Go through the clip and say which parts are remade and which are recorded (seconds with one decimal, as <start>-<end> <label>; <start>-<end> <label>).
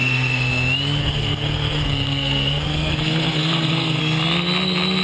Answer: 0.0-0.5 remade; 0.5-1.0 recorded; 1.0-4.0 remade; 4.0-5.0 recorded